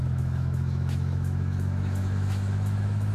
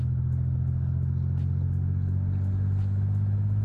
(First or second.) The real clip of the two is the second